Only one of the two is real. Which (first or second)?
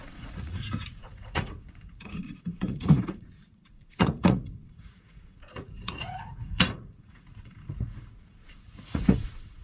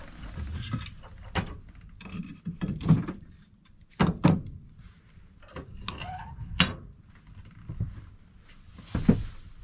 second